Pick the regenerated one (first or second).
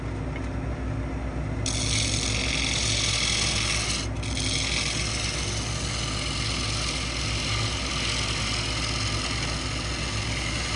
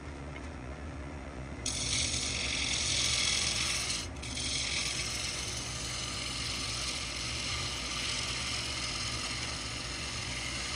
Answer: second